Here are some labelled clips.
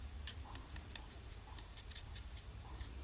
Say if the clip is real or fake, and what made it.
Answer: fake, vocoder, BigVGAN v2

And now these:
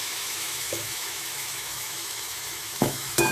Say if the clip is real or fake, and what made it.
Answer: fake, autoencoder, DAC-VAE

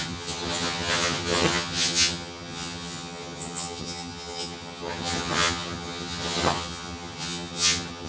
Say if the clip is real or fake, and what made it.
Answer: fake, vocoder, HiFi-GAN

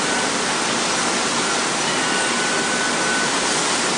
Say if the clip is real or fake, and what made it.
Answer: real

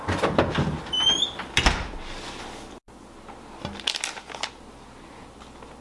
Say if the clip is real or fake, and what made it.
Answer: real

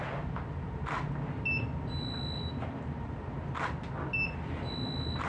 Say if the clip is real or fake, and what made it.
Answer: real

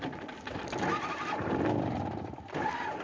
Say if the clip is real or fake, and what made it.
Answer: fake, vocoder, BigVGAN v2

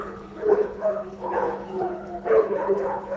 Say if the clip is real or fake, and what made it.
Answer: fake, codec, HILCodec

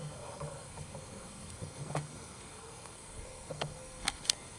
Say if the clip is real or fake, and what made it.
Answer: fake, codec, SNAC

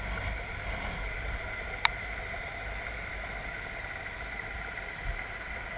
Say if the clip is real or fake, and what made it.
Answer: real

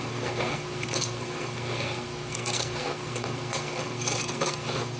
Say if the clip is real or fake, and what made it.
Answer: fake, codec, SNAC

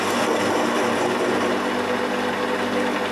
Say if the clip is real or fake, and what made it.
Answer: real